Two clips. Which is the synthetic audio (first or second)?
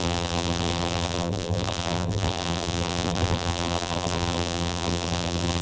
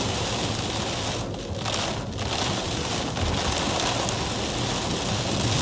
first